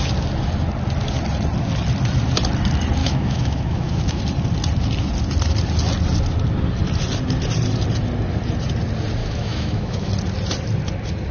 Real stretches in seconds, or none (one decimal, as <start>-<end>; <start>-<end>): 0.0-3.0; 4.2-9.2; 10.1-11.3